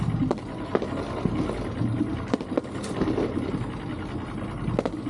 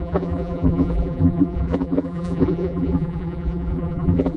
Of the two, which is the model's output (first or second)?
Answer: second